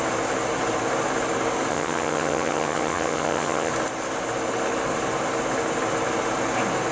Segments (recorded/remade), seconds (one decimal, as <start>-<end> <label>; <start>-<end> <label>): 0.0-1.7 recorded; 1.7-3.7 remade; 3.7-6.9 recorded